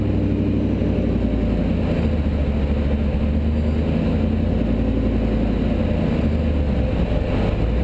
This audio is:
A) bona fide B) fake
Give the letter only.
A